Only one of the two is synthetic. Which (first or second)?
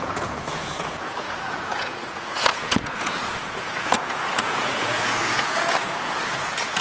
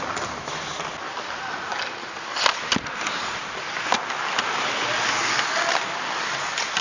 first